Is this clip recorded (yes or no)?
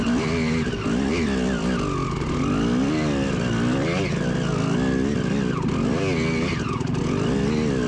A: yes